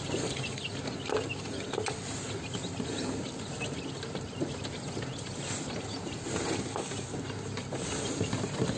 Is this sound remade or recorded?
recorded